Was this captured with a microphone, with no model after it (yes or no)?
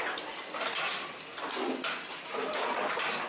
yes